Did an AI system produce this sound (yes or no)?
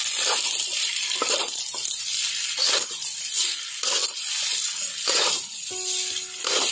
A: no